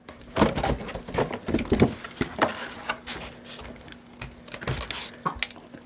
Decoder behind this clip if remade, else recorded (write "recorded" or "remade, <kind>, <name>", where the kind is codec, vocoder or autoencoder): recorded